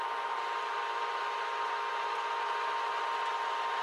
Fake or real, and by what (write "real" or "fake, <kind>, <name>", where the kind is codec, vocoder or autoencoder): real